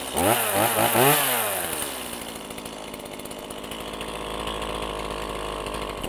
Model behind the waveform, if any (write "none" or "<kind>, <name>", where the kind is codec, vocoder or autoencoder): none